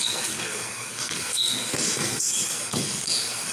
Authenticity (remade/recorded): remade